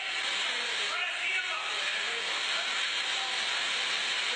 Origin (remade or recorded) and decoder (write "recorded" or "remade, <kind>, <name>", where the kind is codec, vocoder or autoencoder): recorded